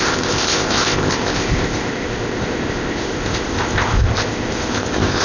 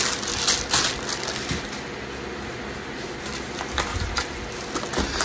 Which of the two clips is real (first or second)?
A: second